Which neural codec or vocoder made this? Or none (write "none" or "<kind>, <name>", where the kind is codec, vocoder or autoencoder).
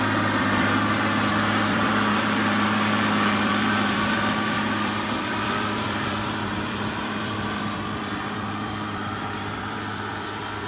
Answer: vocoder, BigVGAN v2